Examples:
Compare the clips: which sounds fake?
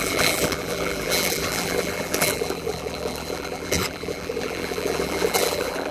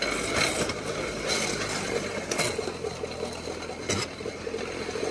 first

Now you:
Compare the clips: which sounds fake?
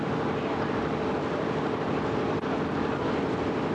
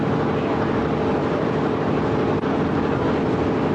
first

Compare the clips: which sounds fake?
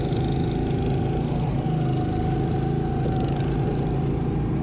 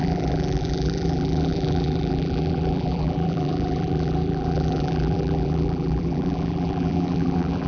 second